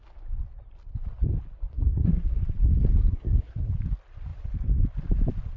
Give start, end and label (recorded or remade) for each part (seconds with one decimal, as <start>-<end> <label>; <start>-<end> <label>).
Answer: 0.0-1.7 recorded; 1.7-2.4 remade; 2.4-3.0 recorded; 3.0-3.7 remade; 3.7-5.6 recorded